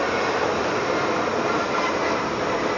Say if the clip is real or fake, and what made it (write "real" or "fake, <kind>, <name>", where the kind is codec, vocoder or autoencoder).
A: real